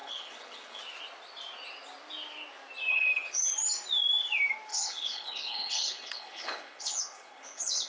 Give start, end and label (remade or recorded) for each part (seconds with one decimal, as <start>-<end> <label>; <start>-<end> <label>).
0.0-0.8 remade; 0.8-2.9 recorded; 2.9-3.5 remade; 3.5-4.7 recorded; 4.7-7.9 remade